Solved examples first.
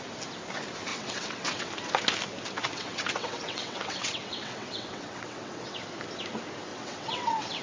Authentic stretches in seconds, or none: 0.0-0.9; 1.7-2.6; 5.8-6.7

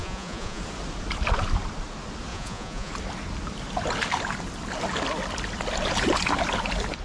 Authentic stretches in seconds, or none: 0.6-2.3; 2.9-7.0

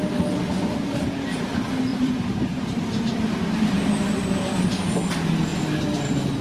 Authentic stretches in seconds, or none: 0.0-1.9; 4.9-6.4

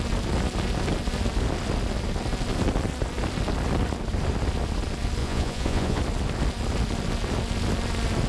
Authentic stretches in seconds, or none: 0.0-5.2; 6.0-8.3

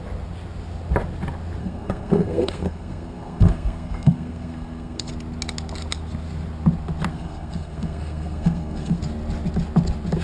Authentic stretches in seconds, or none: 0.0-1.6; 5.1-7.1; 9.0-10.2

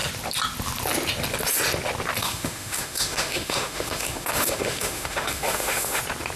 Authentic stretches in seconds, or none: 0.0-2.2; 6.0-6.4

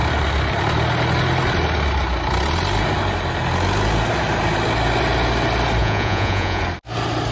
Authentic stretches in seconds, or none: 0.0-5.8; 6.6-7.3